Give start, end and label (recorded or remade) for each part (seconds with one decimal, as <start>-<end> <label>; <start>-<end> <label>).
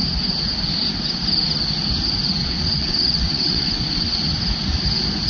0.0-2.4 recorded; 2.4-4.2 remade; 4.2-5.3 recorded